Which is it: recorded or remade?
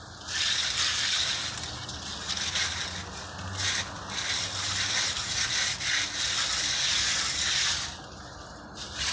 recorded